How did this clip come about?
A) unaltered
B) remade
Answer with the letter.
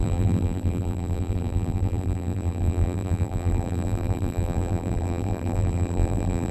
B